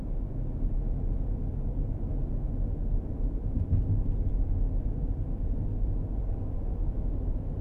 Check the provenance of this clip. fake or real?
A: real